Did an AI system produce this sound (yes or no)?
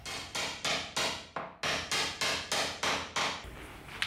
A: no